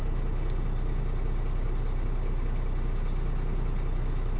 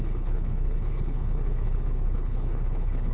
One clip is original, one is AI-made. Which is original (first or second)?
first